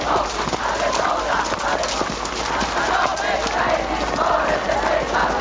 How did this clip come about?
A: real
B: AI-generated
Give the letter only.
A